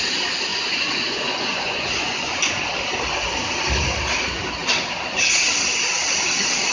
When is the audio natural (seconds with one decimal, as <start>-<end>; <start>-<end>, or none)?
0.0-0.5; 2.4-6.7